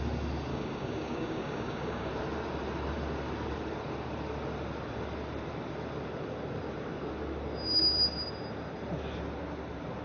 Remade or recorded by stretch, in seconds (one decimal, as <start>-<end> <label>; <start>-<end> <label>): 0.0-0.5 recorded; 0.5-2.1 remade; 2.1-10.0 recorded

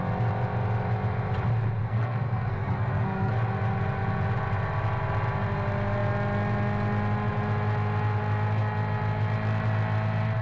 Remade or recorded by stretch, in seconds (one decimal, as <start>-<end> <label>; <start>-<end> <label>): 0.0-1.8 recorded; 1.8-3.3 remade; 3.3-10.4 recorded